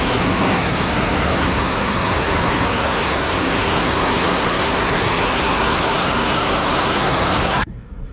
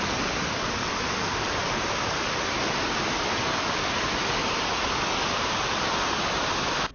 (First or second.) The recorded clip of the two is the second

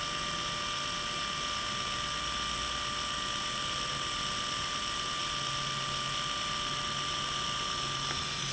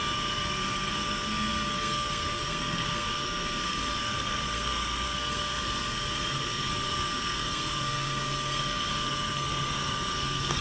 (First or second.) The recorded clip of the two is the first